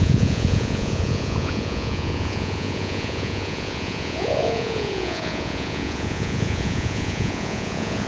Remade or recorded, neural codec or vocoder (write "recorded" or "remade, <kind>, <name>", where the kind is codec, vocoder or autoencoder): remade, vocoder, Vocos